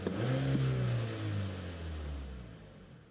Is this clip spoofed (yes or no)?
no